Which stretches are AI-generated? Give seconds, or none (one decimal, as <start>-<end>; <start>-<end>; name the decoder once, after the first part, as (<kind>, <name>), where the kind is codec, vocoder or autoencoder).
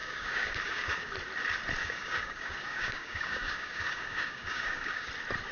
0.0-1.1 (codec, DAC); 1.8-5.1